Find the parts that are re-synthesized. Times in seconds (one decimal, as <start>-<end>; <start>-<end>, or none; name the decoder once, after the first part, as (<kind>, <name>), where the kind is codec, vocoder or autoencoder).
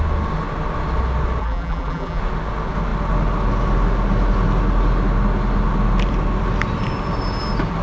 1.4-2.2 (vocoder, BigVGAN v2)